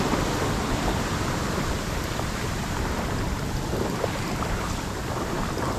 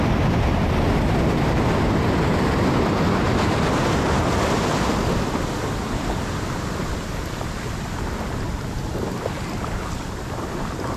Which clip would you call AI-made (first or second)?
first